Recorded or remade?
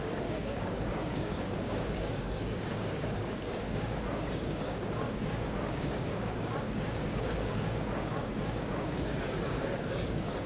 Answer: remade